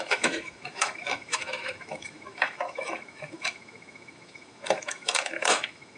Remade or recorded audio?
remade